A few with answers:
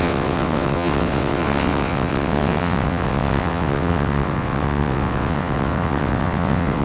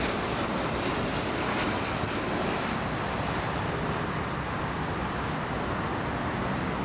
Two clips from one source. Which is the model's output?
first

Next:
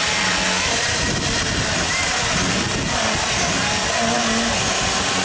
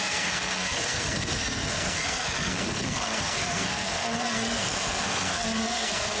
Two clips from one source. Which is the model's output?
second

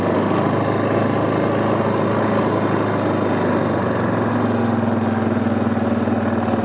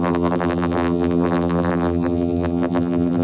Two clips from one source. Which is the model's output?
second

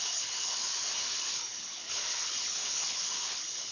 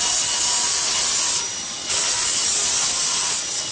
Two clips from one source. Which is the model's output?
first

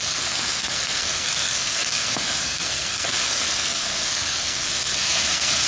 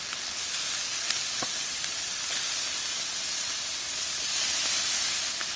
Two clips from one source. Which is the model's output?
first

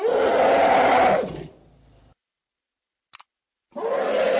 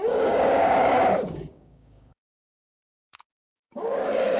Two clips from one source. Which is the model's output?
second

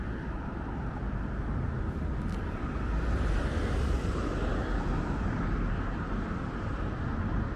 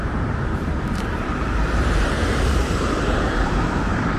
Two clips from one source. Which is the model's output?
second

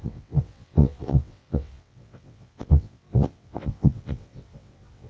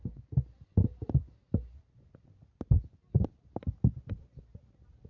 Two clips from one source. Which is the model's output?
first